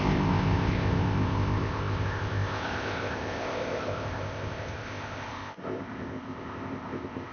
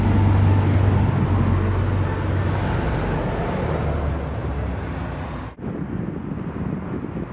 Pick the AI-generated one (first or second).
first